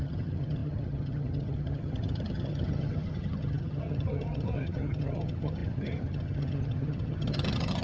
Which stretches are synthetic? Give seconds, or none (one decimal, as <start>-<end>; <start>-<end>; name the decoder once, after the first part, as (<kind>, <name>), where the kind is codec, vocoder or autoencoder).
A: 0.0-7.8 (vocoder, HiFi-GAN)